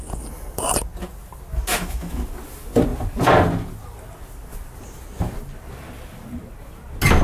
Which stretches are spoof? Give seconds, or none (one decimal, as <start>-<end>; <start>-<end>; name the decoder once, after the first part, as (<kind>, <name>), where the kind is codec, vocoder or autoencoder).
1.7-2.2 (autoencoder, DAC-VAE)